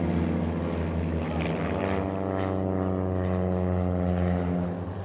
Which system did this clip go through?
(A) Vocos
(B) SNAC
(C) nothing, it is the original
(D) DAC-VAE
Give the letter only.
C